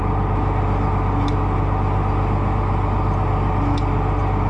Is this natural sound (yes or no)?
yes